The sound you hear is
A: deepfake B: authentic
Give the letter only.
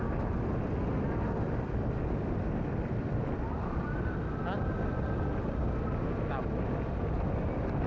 B